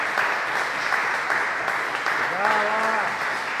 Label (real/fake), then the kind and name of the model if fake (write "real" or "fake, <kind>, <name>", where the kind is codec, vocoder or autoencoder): real